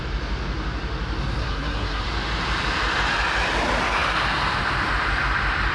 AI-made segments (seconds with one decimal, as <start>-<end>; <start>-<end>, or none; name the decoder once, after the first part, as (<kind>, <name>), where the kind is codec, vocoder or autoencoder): 1.4-2.0 (codec, SNAC)